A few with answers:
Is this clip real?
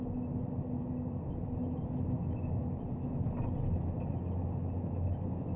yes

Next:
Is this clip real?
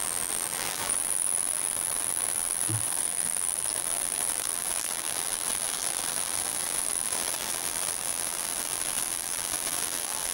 no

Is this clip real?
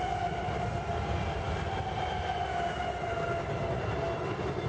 yes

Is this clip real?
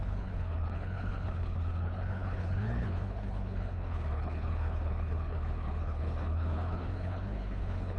no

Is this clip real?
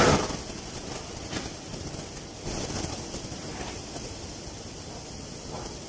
yes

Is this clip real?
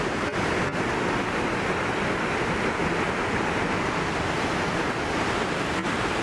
yes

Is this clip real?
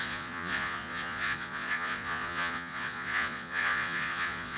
no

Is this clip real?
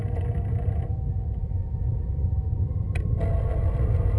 yes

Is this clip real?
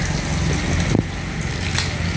yes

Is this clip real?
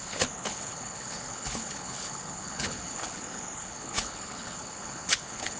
no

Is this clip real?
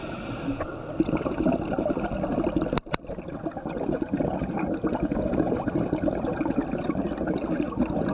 yes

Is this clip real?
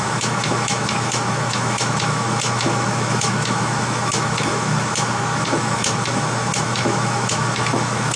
no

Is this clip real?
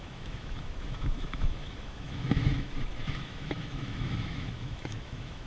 no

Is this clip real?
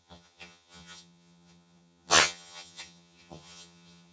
no